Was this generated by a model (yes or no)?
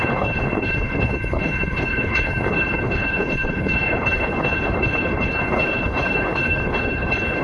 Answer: yes